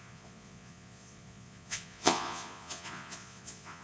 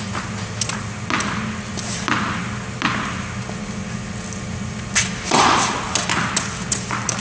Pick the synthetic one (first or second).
first